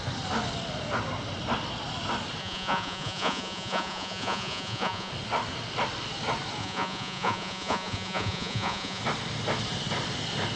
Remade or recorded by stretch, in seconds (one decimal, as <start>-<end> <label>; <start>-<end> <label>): 0.0-2.4 recorded; 2.4-5.1 remade; 5.1-6.6 recorded; 6.6-9.0 remade; 9.0-10.6 recorded